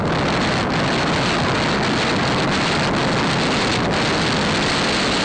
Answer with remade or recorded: recorded